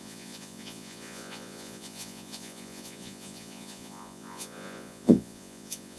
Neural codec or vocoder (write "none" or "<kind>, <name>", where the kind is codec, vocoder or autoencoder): vocoder, Vocos